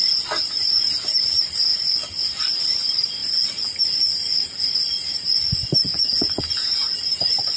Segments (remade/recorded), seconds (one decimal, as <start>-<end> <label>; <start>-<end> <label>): 0.0-5.8 recorded; 5.8-6.4 remade; 6.4-7.6 recorded